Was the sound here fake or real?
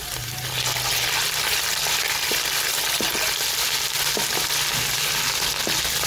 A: real